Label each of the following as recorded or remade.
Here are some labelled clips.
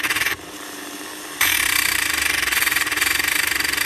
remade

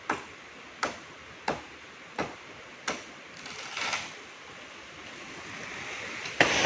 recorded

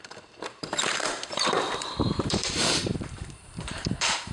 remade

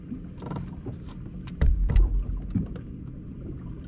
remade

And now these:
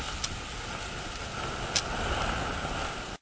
recorded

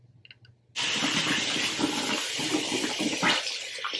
recorded